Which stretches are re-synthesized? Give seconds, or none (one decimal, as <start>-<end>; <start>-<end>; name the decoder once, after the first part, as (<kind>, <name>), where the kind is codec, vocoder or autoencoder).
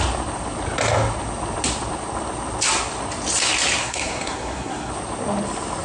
3.8-4.9 (codec, SNAC)